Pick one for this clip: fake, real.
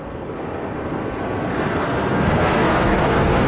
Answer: fake